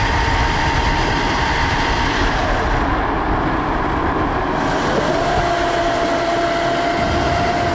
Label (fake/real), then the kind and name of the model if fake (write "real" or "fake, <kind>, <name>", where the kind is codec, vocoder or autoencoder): real